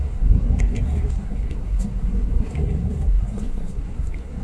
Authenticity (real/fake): fake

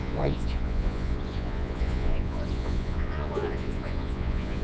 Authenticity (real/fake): fake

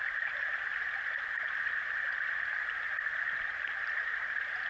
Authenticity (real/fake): real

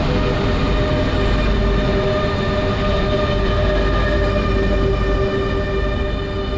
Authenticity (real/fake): real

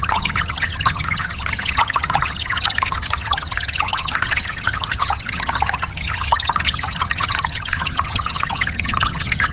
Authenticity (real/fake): fake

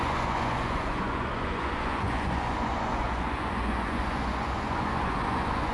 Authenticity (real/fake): fake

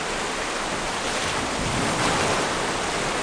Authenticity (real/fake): real